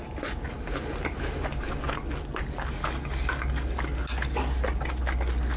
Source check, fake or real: real